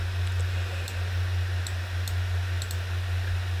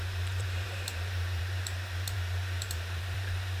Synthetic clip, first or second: second